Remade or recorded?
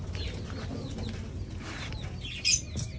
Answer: recorded